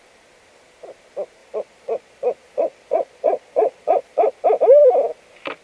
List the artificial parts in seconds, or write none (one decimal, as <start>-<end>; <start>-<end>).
1.4-4.3